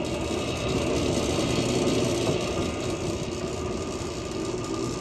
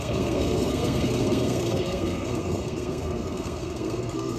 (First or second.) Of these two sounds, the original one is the first